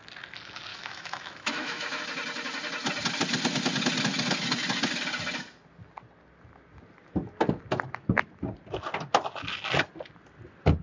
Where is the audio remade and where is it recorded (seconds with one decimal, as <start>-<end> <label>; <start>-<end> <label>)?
0.0-0.7 recorded; 0.7-2.0 remade; 2.0-10.8 recorded